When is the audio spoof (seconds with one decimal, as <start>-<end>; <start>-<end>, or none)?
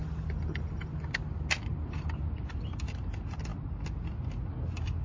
none